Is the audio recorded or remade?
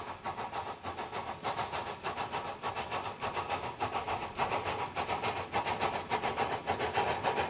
recorded